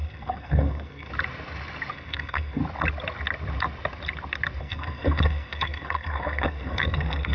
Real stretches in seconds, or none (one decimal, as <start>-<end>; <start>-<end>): 1.1-1.9; 2.6-4.6